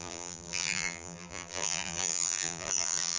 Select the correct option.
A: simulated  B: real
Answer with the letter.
A